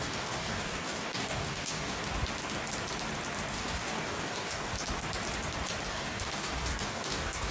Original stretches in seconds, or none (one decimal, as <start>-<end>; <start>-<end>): 2.0-3.5; 4.7-5.9